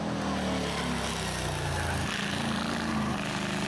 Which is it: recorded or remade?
recorded